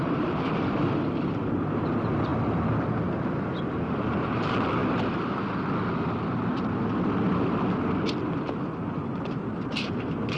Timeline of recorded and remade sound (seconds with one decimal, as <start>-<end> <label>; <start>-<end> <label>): 0.0-2.3 remade; 2.3-3.9 recorded; 3.9-4.8 remade; 4.8-8.4 recorded; 8.4-10.4 remade

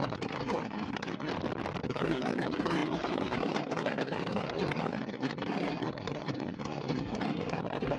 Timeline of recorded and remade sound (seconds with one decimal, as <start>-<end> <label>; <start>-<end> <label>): 0.0-1.3 remade; 1.3-1.8 recorded; 1.8-8.0 remade